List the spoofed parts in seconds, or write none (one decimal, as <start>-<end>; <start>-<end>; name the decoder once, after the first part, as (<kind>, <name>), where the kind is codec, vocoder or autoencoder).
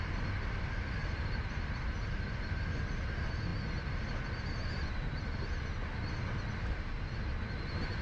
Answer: 1.0-2.7 (vocoder, BigVGAN v2)